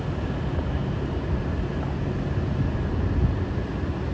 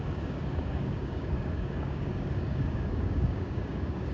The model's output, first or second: second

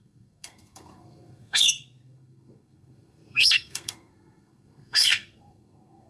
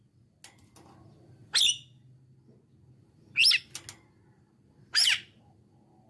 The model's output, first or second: first